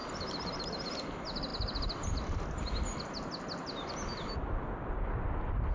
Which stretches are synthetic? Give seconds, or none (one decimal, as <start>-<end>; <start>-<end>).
0.0-0.9